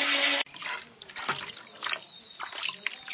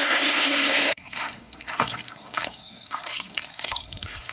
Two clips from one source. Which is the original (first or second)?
first